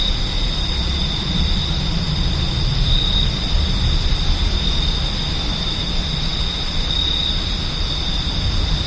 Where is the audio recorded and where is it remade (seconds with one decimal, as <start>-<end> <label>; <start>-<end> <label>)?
0.0-8.9 recorded

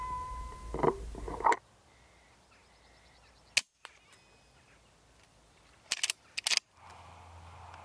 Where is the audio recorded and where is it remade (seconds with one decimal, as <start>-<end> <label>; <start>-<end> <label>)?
0.0-7.8 recorded

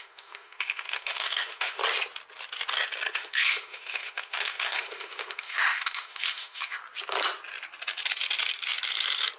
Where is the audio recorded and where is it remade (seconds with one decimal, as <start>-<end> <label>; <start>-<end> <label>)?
0.0-1.8 remade; 1.8-3.1 recorded; 3.1-6.8 remade; 6.8-9.4 recorded

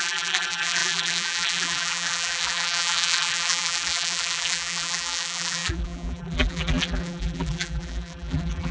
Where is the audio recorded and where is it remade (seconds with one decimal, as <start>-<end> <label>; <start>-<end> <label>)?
0.0-8.7 remade